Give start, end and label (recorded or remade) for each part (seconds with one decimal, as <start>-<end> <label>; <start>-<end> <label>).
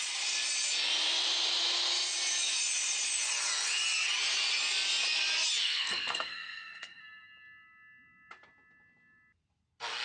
0.0-5.6 recorded; 5.6-7.0 remade; 7.0-10.0 recorded